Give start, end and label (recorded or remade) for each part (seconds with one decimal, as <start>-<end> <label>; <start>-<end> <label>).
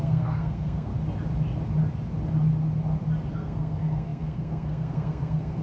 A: 0.0-0.9 remade; 0.9-3.3 recorded; 3.3-5.6 remade